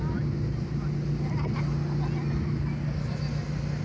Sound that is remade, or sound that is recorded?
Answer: recorded